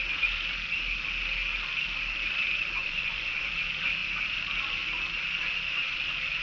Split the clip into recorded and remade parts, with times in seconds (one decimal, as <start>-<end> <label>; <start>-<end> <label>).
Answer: 0.0-2.8 recorded; 2.8-3.4 remade; 3.4-6.4 recorded